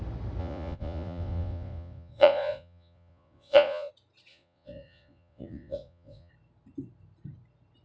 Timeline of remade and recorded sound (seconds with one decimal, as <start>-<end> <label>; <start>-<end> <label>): 0.0-0.4 recorded; 0.4-3.9 remade; 3.9-4.3 recorded; 4.3-6.3 remade; 6.3-7.8 recorded